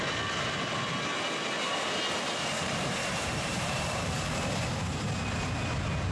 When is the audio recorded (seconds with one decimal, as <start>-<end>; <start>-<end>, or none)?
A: 0.0-2.6; 3.9-6.1